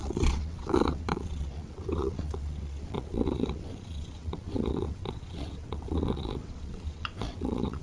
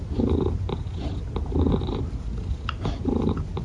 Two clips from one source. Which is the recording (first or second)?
second